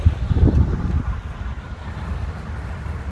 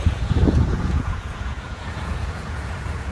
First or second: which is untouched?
first